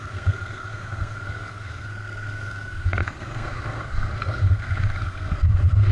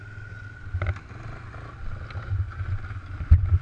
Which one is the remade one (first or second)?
first